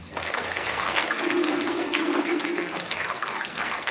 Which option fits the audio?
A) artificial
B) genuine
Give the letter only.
A